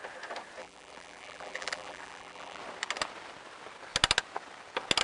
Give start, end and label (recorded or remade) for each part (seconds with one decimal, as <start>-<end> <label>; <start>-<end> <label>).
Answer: 0.0-0.6 recorded; 0.6-2.6 remade; 2.6-5.0 recorded